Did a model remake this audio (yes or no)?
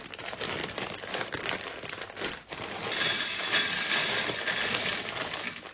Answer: no